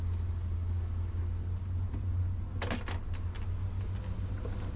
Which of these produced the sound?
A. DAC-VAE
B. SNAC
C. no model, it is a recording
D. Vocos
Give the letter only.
C